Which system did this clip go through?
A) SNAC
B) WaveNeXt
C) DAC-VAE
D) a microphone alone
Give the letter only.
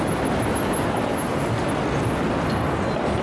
D